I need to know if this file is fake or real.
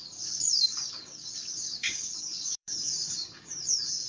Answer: fake